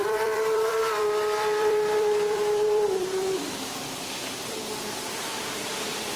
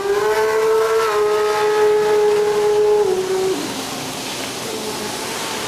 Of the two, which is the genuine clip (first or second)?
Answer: second